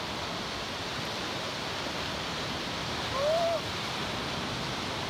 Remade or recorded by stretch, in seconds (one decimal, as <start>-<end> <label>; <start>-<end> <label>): 0.0-5.1 recorded

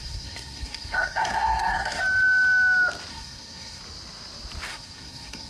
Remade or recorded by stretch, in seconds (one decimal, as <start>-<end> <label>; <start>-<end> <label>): 0.0-2.0 remade; 2.0-3.1 recorded; 3.1-3.8 remade; 3.8-4.7 recorded; 4.7-5.5 remade

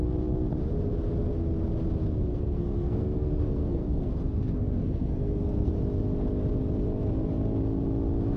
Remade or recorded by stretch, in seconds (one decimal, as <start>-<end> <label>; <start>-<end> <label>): 0.0-2.3 recorded; 2.3-5.7 remade; 5.7-8.4 recorded

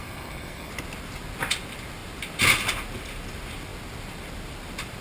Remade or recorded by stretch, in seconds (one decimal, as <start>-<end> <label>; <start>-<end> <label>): 0.0-0.7 remade; 0.7-5.0 recorded